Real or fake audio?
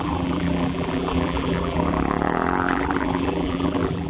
fake